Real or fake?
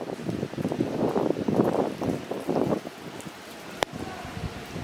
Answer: fake